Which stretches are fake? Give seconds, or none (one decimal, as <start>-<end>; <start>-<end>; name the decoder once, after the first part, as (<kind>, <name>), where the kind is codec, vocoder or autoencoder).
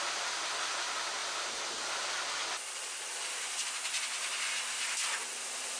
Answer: none